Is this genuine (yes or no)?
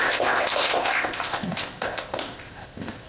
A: no